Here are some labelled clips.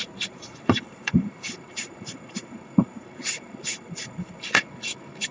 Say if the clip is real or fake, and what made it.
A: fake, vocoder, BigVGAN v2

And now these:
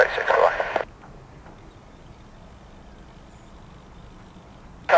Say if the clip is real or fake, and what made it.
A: real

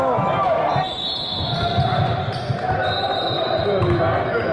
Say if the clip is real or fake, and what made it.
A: real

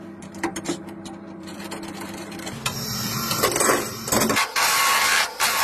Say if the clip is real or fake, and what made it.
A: fake, vocoder, BigVGAN v2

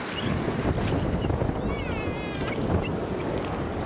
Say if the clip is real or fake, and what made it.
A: real